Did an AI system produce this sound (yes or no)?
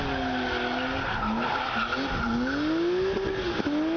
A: no